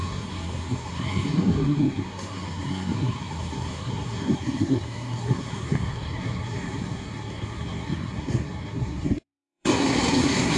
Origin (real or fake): fake